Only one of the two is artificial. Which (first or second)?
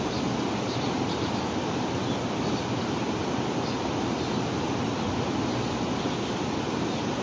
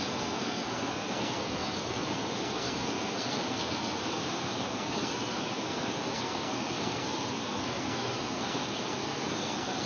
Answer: second